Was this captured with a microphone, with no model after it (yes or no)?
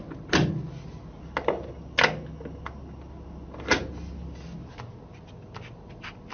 yes